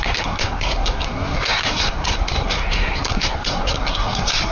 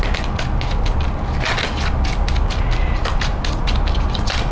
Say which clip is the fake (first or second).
first